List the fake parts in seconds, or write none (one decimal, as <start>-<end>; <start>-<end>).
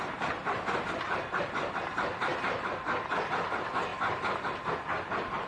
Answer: none